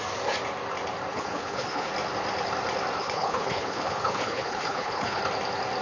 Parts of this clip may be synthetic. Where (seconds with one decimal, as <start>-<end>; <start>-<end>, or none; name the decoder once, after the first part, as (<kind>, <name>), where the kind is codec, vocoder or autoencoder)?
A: 1.1-1.9 (codec, HILCodec); 3.0-5.2